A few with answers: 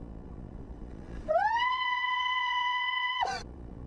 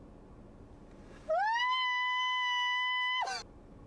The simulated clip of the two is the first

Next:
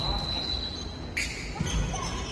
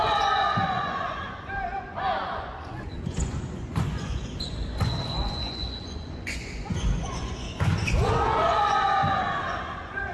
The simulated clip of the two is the second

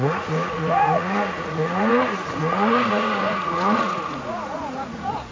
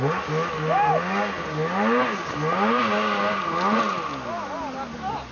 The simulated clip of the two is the first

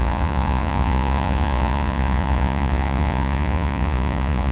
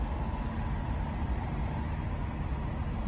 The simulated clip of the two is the first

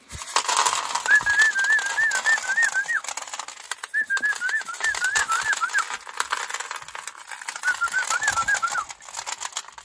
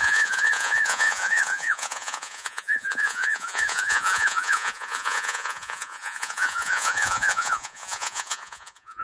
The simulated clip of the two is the second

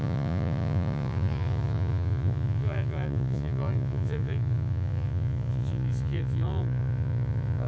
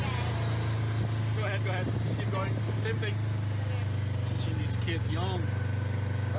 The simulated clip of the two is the first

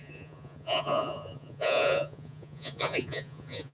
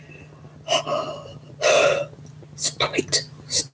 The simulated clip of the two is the first